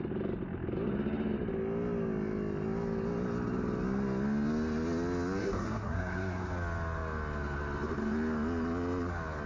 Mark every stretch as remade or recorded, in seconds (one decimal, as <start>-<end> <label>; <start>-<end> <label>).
0.0-5.4 recorded; 5.4-6.5 remade; 6.5-9.5 recorded

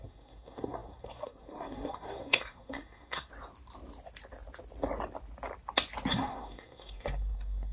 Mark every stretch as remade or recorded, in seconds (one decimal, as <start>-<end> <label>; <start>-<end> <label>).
0.0-3.3 remade; 3.3-6.1 recorded; 6.1-7.7 remade